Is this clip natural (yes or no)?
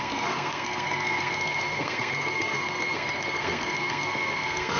no